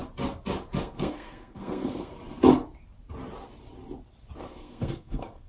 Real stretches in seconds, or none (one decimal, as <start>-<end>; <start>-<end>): 0.0-0.8; 2.1-4.4